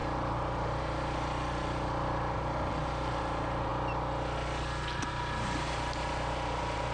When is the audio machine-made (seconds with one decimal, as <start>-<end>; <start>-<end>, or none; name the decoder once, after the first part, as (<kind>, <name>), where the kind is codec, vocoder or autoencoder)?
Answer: 0.0-3.7 (vocoder, BigVGAN v2); 5.1-6.9